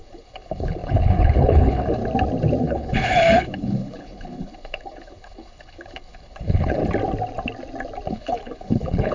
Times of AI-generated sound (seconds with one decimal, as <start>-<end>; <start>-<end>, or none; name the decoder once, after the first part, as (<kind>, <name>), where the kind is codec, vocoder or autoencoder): 0.0-2.0 (codec, HILCodec); 2.6-6.8; 8.1-9.1